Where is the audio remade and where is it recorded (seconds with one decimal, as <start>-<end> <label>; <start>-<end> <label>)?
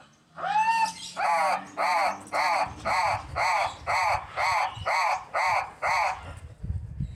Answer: 0.0-7.1 recorded